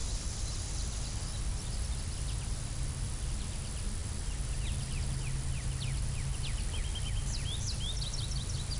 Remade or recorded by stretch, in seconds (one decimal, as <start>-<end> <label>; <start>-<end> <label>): 0.0-8.8 recorded